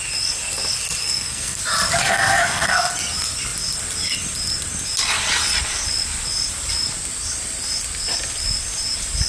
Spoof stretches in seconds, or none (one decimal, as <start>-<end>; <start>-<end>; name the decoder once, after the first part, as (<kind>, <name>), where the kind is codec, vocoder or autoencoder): 1.0-1.6 (codec, SNAC); 2.0-2.9